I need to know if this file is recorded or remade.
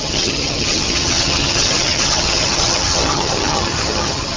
remade